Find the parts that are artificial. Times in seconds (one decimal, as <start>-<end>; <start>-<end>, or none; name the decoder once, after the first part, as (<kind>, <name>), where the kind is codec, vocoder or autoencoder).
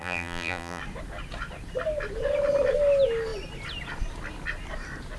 0.0-0.8 (vocoder, BigVGAN v2)